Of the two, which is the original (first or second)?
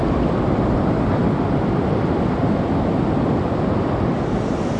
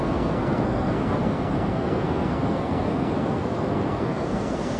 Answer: first